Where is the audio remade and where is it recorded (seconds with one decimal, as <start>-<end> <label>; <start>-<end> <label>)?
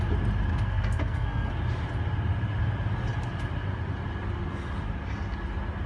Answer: 0.0-0.5 recorded; 0.5-1.5 remade; 1.5-5.9 recorded